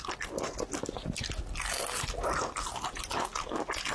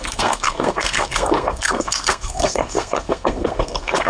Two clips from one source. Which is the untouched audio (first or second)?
first